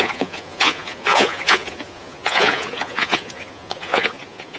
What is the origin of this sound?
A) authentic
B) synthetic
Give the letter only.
B